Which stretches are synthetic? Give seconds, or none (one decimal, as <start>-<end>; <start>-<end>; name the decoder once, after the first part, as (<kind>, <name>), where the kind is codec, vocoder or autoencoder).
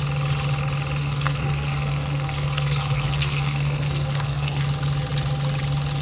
1.0-4.6 (codec, SNAC)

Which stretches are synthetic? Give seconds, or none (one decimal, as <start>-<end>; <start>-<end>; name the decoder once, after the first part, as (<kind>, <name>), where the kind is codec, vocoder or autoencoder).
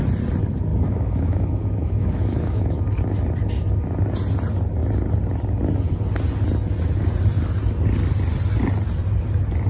0.7-2.8 (autoencoder, DAC-VAE)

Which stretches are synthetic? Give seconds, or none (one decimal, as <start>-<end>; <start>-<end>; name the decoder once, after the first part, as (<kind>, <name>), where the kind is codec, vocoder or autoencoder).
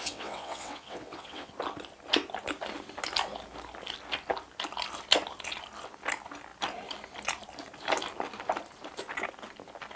0.0-1.5 (vocoder, WaveNeXt)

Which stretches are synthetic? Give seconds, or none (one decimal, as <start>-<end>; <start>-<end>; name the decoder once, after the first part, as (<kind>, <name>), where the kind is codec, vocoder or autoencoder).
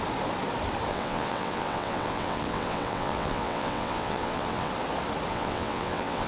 0.9-4.7 (vocoder, WaveNeXt); 5.3-6.3